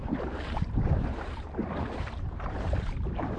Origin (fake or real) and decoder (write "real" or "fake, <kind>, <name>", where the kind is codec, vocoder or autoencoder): fake, vocoder, BigVGAN v2